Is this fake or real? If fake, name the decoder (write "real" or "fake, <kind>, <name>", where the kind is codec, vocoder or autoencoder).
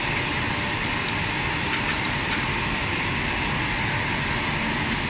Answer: real